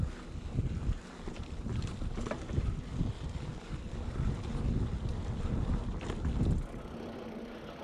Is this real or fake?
real